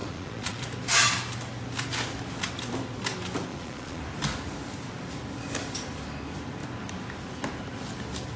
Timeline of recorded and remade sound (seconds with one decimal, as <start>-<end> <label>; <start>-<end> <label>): 0.0-0.6 remade; 0.6-3.5 recorded; 3.5-4.0 remade; 4.0-8.4 recorded